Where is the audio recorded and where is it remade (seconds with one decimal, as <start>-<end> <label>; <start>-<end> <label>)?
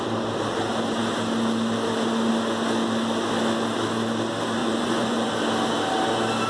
0.0-4.6 recorded; 4.6-5.3 remade; 5.3-6.5 recorded